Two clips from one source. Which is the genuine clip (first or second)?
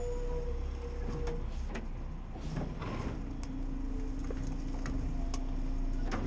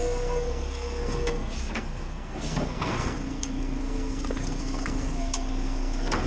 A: first